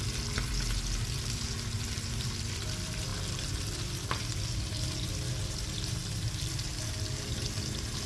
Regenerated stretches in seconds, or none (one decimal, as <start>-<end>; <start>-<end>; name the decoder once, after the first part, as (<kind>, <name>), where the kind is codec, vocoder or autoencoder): 0.0-8.1 (vocoder, BigVGAN v2)